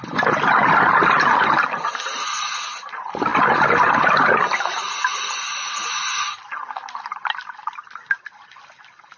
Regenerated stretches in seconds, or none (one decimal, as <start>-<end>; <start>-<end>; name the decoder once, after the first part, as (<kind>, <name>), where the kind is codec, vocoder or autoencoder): none